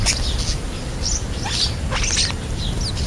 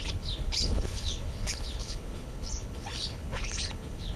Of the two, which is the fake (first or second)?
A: second